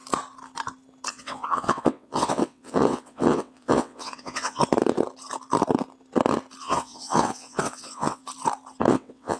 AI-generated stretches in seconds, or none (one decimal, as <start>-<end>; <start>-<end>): 1.1-4.6; 6.6-8.2; 8.9-9.4